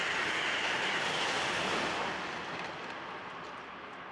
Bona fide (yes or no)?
yes